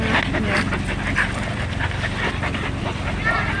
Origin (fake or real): real